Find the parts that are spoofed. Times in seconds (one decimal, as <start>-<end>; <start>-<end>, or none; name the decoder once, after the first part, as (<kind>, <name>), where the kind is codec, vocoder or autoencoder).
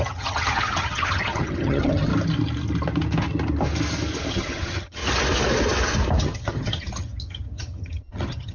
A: 0.0-2.1 (vocoder, HiFi-GAN); 4.3-5.0; 6.2-8.5